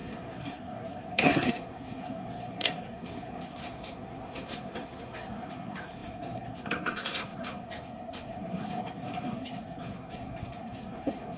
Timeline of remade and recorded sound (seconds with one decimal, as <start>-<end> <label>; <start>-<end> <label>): 0.0-11.4 remade